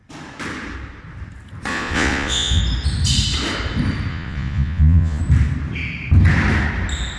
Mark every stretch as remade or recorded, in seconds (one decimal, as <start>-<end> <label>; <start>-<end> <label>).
0.0-1.7 recorded; 1.7-2.6 remade; 2.6-4.1 recorded; 4.1-5.2 remade; 5.2-7.2 recorded